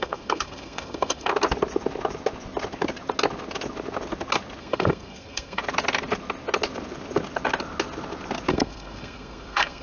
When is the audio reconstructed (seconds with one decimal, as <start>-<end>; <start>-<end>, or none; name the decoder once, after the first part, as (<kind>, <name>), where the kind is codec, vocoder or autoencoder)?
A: 0.0-1.3 (codec, SNAC); 4.6-5.6; 8.5-9.8